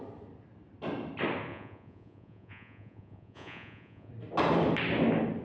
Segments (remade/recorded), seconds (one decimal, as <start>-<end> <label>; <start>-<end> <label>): 0.0-1.5 recorded; 1.5-4.1 remade; 4.1-5.4 recorded